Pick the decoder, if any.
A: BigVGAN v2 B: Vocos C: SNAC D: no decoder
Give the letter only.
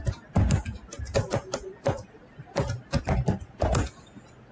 D